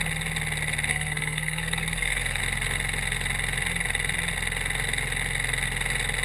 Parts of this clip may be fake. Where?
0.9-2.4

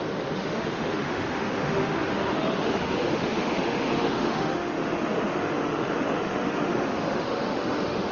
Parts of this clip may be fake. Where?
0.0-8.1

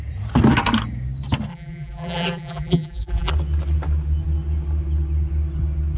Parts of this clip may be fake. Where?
1.5-3.3

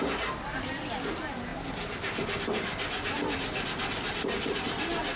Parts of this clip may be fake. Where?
none